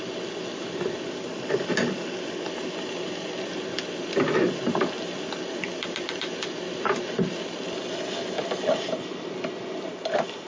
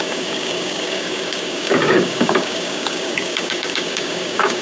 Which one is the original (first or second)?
first